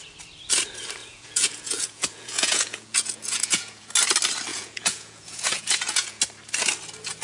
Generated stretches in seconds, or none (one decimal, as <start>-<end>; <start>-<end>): 1.0-3.9; 4.5-6.2